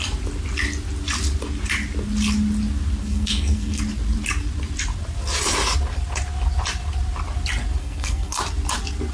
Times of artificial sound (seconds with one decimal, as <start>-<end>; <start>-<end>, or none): 3.0-3.8; 7.8-8.4